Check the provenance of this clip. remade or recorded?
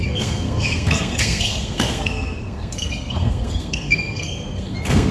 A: remade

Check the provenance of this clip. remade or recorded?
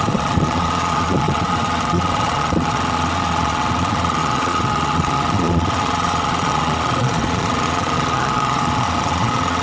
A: remade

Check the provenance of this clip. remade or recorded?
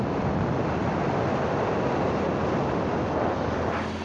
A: recorded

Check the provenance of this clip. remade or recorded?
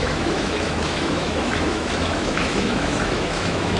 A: remade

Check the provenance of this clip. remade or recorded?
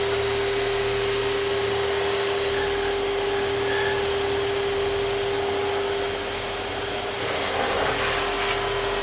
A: recorded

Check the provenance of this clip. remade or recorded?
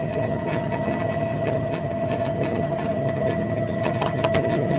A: remade